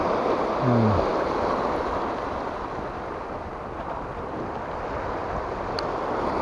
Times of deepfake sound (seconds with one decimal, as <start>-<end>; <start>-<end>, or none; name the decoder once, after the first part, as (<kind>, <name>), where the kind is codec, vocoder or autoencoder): none